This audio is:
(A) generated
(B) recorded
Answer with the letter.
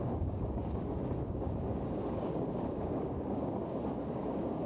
A